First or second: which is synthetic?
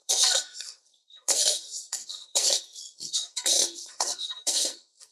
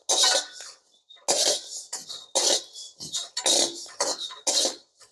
first